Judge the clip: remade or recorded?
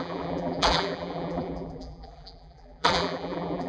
remade